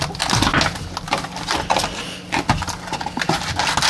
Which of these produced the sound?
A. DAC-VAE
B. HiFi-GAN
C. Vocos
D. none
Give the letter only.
D